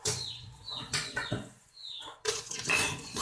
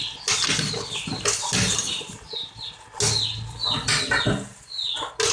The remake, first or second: first